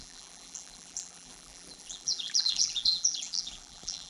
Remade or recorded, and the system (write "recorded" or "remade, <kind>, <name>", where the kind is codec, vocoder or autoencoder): remade, vocoder, BigVGAN v2